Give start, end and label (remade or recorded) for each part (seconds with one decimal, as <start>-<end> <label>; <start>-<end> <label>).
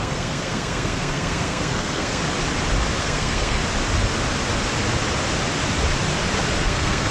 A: 0.0-2.2 remade; 2.2-3.0 recorded; 3.0-3.6 remade; 3.6-6.6 recorded; 6.6-7.1 remade